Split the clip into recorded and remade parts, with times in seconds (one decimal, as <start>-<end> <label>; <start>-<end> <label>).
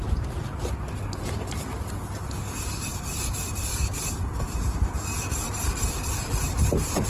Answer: 0.0-2.9 recorded; 2.9-4.1 remade; 4.1-5.4 recorded; 5.4-7.1 remade